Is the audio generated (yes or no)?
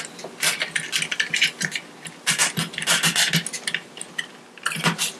no